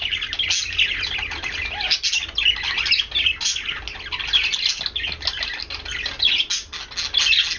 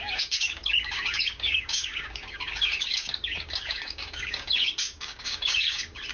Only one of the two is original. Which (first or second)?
first